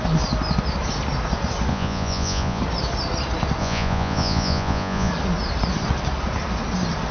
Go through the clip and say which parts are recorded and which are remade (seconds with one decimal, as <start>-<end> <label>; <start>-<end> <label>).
0.0-1.7 recorded; 1.7-2.6 remade; 2.6-3.6 recorded; 3.6-5.1 remade; 5.1-7.1 recorded